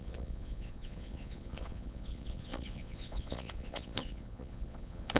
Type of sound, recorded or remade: remade